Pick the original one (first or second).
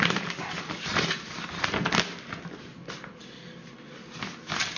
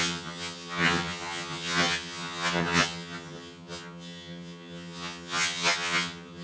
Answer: first